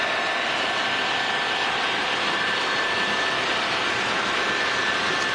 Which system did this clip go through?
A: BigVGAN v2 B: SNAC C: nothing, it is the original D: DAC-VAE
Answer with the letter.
C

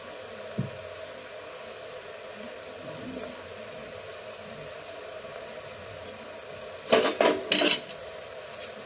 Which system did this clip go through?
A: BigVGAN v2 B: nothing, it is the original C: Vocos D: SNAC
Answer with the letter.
B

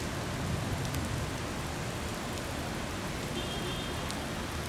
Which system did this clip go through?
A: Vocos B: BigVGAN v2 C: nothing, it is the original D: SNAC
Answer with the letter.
C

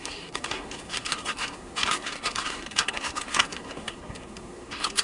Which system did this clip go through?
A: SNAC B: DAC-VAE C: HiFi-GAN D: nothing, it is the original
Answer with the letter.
A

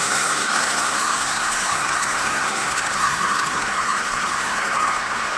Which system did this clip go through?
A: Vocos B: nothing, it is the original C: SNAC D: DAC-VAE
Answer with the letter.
C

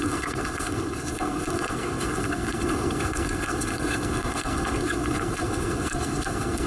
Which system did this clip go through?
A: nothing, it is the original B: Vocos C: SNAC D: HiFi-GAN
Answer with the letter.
C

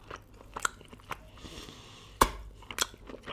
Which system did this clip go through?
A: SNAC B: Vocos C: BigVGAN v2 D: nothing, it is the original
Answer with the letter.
D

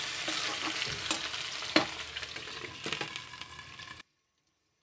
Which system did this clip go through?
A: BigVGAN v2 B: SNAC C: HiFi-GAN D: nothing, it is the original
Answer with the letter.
D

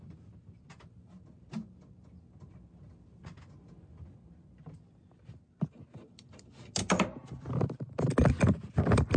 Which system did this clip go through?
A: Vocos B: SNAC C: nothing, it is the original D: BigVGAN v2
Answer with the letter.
C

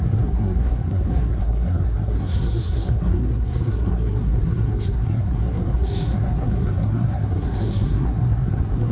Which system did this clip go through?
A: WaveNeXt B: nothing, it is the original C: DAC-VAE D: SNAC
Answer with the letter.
D